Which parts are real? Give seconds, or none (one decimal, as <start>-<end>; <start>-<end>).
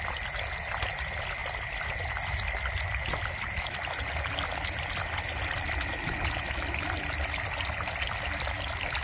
0.0-9.0